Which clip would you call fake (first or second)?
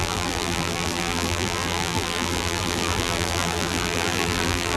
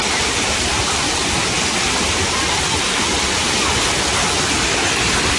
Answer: first